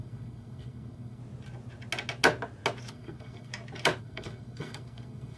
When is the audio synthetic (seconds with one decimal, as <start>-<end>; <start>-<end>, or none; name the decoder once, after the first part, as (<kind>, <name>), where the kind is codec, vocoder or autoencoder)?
0.0-1.2 (codec, SNAC); 2.9-3.5; 4.0-5.4